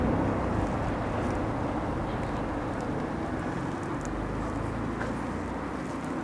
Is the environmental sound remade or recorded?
recorded